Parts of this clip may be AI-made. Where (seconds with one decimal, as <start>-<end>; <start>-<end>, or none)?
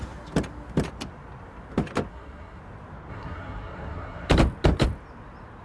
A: 2.1-2.6; 3.1-4.3